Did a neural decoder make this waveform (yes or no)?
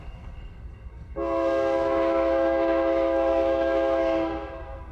yes